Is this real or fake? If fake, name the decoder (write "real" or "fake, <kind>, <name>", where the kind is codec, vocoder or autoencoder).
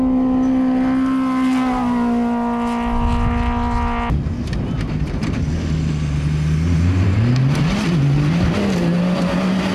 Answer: real